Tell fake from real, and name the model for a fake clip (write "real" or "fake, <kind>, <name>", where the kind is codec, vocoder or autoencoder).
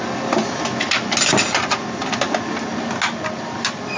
real